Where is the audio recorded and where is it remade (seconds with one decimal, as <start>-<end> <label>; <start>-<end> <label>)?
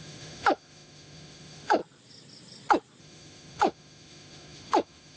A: 0.0-1.8 remade; 1.8-3.0 recorded; 3.0-5.2 remade